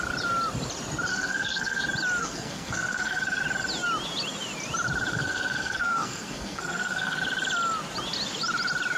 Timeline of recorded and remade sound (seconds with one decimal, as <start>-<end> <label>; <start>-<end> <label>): 0.0-1.1 recorded; 1.1-1.8 remade; 1.8-2.2 recorded; 2.2-3.4 remade; 3.4-5.1 recorded; 5.1-7.2 remade; 7.2-9.0 recorded